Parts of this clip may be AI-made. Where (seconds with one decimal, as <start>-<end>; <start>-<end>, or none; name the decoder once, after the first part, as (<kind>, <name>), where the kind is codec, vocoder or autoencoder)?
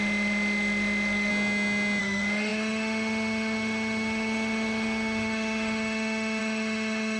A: 0.0-1.3 (autoencoder, DAC-VAE); 2.0-7.2